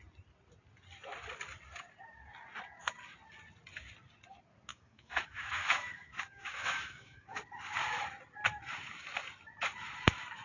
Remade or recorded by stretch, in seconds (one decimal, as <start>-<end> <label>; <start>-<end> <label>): 0.0-4.7 recorded; 4.7-7.4 remade; 7.4-10.4 recorded